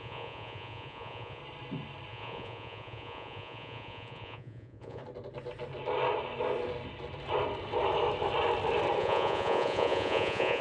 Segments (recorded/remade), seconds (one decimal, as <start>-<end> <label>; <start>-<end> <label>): 0.0-1.4 remade; 1.4-2.1 recorded; 2.1-5.0 remade; 5.0-9.0 recorded; 9.0-10.6 remade